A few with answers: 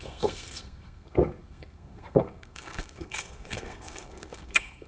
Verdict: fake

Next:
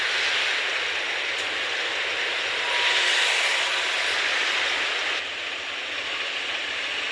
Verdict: real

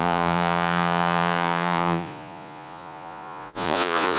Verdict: fake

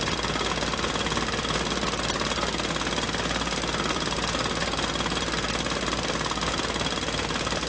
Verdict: real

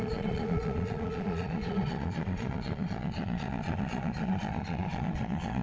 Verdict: fake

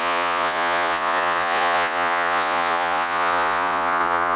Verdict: fake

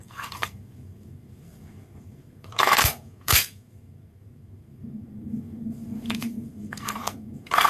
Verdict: fake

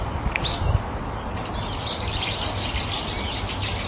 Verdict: real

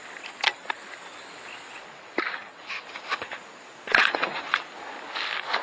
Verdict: real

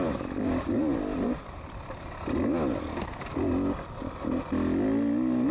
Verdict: real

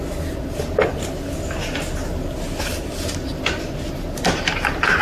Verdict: real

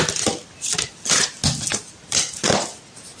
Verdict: real